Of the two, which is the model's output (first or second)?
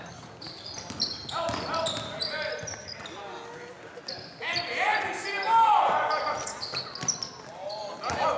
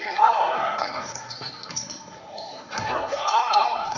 second